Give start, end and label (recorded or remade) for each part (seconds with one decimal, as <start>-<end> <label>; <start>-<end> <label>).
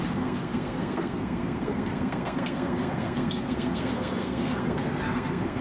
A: 0.0-5.6 remade